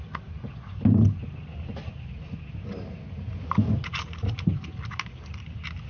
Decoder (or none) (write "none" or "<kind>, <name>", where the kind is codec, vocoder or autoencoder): none